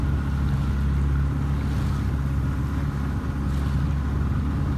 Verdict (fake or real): real